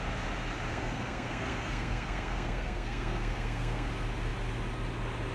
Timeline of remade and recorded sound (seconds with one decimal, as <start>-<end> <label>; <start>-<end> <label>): 0.0-0.7 recorded; 0.7-3.9 remade; 3.9-5.3 recorded